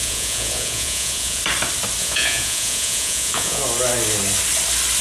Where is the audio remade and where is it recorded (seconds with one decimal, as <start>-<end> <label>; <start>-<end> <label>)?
0.0-1.4 remade; 1.4-2.0 recorded; 2.0-3.6 remade; 3.6-5.0 recorded